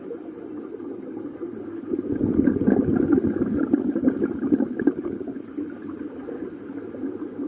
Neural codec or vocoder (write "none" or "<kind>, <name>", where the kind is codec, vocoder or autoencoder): none